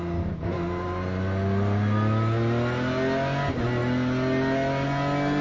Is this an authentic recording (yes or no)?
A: yes